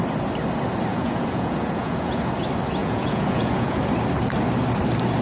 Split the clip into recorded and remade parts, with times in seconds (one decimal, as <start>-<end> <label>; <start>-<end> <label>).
0.0-0.9 recorded; 0.9-2.3 remade; 2.3-2.8 recorded; 2.8-3.8 remade; 3.8-5.2 recorded